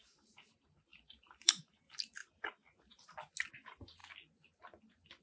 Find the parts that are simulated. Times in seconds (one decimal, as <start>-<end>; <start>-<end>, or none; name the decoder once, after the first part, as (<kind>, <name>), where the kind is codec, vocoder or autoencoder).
0.0-2.2 (vocoder, BigVGAN v2); 3.5-4.0